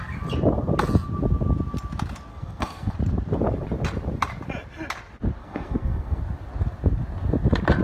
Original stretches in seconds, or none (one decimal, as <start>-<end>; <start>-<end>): 0.0-2.3; 2.9-5.4; 6.2-7.8